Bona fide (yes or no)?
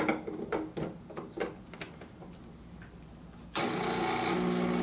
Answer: yes